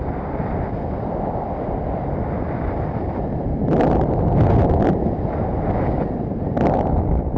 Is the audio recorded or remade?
recorded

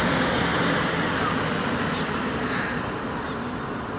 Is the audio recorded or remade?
recorded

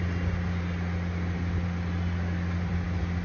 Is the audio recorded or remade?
recorded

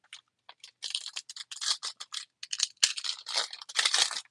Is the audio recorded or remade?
recorded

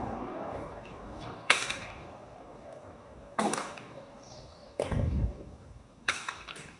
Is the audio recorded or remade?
remade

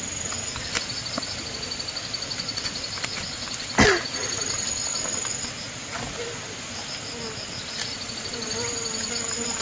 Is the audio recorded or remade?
recorded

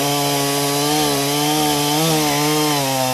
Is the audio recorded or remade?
recorded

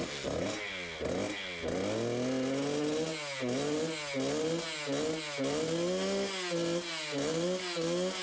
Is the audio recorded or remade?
recorded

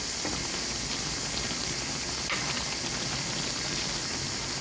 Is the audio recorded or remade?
recorded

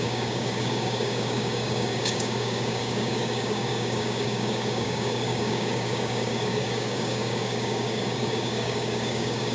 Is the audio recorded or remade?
remade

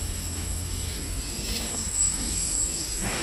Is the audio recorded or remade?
remade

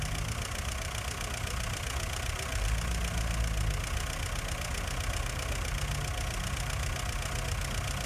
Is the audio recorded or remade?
recorded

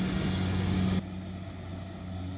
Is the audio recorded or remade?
recorded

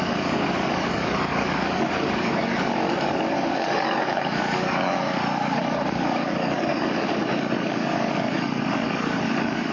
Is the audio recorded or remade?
remade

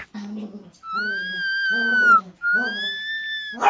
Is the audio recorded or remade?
recorded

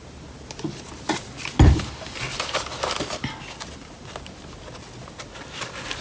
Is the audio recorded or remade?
recorded